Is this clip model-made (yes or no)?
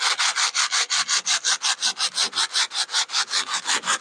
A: no